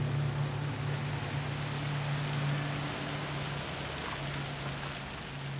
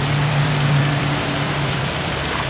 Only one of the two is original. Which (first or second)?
first